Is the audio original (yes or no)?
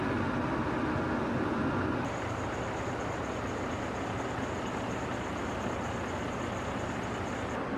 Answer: yes